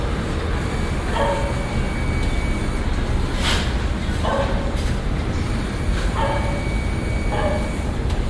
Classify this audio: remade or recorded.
recorded